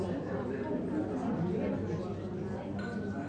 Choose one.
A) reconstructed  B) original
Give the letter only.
B